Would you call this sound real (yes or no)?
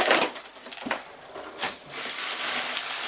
yes